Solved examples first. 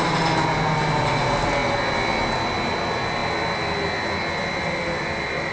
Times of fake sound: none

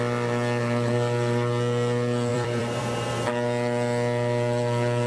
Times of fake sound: 2.3-3.1 (vocoder, BigVGAN v2)

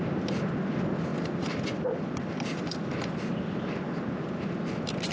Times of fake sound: none

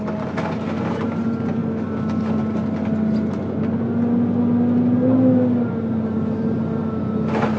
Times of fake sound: none

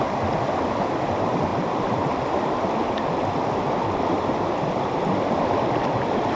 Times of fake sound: none